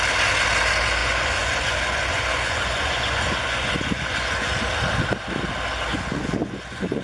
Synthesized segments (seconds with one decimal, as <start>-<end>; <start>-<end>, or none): 1.0-4.5; 5.9-7.0